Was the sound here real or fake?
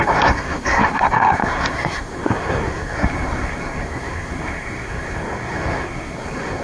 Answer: fake